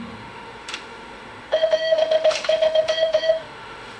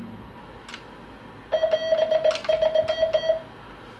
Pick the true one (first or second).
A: second